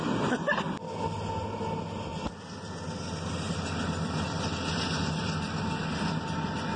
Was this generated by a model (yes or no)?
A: no